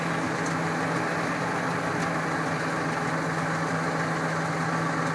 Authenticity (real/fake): real